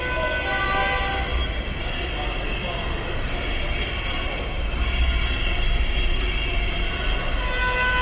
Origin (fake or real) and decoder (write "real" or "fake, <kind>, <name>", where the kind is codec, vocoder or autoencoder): real